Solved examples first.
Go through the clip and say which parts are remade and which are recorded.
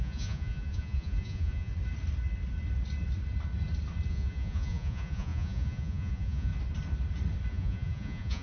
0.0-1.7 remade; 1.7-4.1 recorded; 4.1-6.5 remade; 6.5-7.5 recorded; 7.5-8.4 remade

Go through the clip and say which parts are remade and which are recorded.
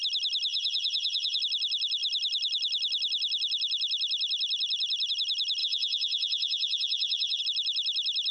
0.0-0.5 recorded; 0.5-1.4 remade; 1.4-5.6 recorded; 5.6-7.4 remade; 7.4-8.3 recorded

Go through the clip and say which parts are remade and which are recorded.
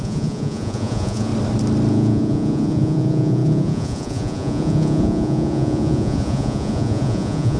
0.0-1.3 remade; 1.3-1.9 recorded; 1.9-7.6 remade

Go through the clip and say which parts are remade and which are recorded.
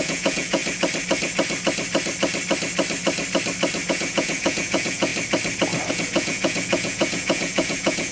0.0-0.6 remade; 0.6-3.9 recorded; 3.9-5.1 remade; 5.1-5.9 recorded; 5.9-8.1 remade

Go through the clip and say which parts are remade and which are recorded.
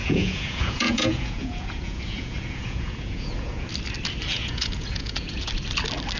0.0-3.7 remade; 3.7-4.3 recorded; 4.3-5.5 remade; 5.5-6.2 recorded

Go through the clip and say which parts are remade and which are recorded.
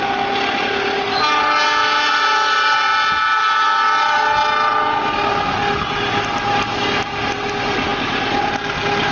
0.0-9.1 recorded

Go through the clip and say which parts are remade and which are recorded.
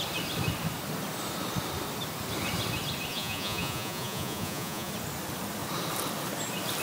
0.0-3.1 recorded; 3.1-4.9 remade; 4.9-6.8 recorded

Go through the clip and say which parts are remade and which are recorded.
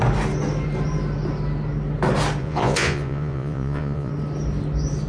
0.0-2.4 recorded; 2.4-4.1 remade; 4.1-5.1 recorded